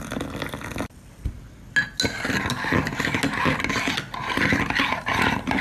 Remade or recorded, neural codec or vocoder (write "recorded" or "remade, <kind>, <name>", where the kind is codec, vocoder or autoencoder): recorded